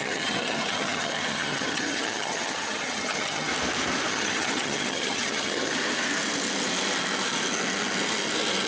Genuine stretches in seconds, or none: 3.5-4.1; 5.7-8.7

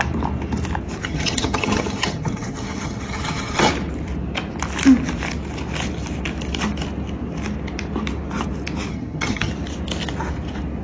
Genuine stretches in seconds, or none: 0.0-1.0; 3.7-8.9; 9.5-10.8